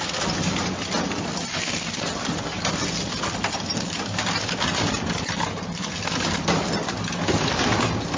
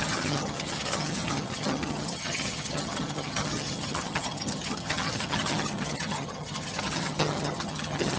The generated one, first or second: second